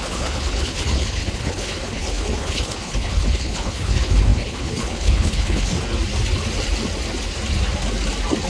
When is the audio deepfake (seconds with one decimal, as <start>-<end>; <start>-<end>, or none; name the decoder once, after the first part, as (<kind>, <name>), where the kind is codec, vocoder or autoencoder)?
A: 0.0-5.7 (codec, HILCodec)